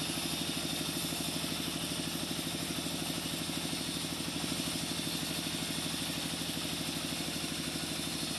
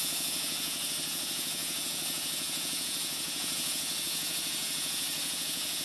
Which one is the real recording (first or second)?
first